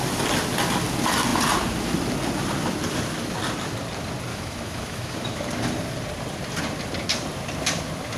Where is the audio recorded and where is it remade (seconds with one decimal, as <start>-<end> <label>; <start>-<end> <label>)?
0.0-4.3 recorded; 4.3-5.4 remade; 5.4-8.2 recorded